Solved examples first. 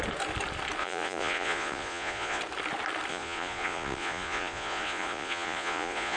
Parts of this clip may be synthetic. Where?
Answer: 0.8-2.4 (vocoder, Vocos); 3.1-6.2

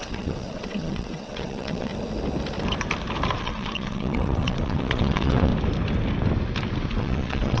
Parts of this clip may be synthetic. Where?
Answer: 0.0-1.9 (vocoder, WaveNeXt); 3.4-5.5; 6.9-7.6